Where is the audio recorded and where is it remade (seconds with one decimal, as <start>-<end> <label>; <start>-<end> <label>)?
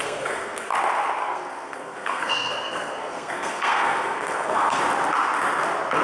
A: 0.0-0.7 remade; 0.7-1.2 recorded; 1.2-4.8 remade; 4.8-6.0 recorded